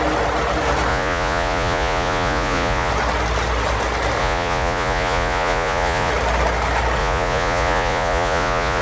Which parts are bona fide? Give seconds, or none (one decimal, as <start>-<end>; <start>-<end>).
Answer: 0.0-0.9; 2.9-4.2; 6.1-7.0